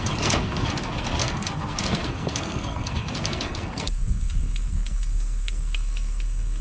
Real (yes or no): no